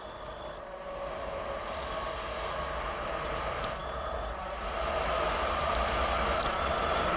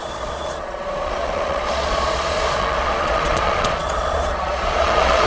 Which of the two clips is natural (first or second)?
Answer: first